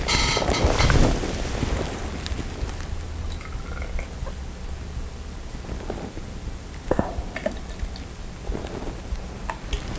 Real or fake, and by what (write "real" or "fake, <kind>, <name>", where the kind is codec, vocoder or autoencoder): real